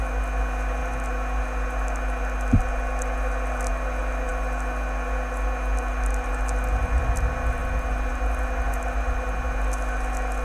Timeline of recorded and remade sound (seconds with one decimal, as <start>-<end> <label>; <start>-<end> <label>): 0.0-10.4 recorded